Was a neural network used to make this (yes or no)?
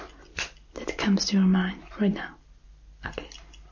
no